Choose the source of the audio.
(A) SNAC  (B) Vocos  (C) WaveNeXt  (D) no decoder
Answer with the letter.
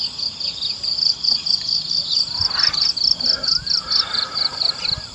D